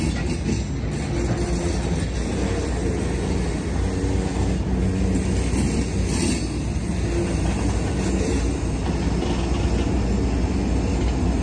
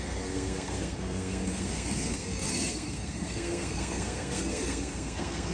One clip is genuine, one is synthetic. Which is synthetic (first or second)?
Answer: second